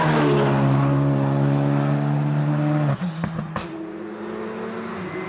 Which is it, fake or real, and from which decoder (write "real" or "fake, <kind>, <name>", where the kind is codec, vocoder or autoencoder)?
real